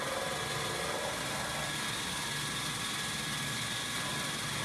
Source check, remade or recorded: recorded